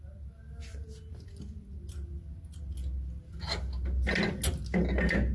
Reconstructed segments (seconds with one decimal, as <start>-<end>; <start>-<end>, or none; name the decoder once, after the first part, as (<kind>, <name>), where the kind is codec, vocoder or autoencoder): none